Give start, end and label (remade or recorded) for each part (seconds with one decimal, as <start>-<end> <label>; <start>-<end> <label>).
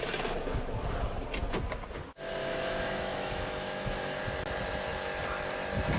0.0-2.4 recorded; 2.4-4.2 remade; 4.2-6.0 recorded